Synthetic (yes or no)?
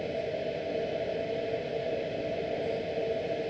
no